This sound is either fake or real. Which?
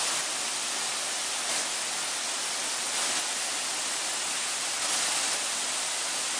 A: real